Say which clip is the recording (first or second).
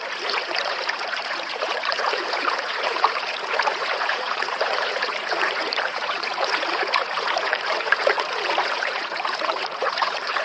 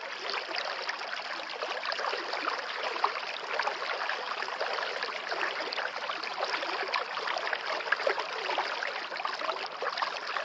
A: second